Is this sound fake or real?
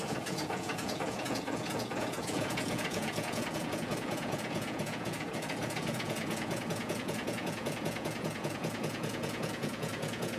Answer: fake